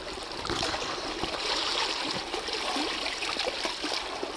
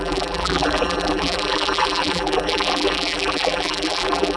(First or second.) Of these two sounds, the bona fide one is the first